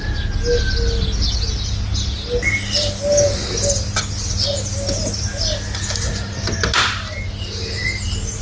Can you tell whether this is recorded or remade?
recorded